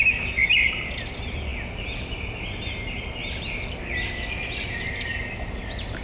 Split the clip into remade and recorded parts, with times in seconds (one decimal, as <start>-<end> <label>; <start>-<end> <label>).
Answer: 0.0-6.0 recorded